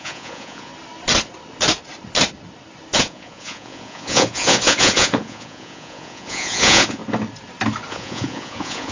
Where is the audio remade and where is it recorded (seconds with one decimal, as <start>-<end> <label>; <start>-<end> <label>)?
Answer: 0.0-0.7 remade; 0.7-3.0 recorded; 3.0-7.0 remade; 7.0-7.9 recorded; 7.9-8.9 remade